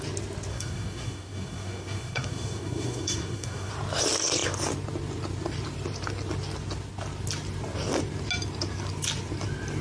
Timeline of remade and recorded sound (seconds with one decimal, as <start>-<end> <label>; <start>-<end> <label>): 0.0-0.5 recorded; 0.5-3.7 remade; 3.7-9.8 recorded